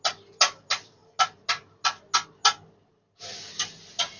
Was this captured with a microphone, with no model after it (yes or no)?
yes